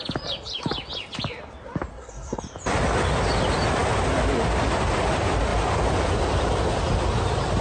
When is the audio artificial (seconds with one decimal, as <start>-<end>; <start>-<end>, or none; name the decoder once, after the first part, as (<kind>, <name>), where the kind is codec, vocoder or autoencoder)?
1.9-2.4 (codec, SNAC)